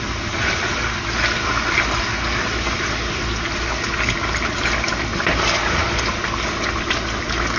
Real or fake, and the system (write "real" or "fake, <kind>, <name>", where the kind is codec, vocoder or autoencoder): real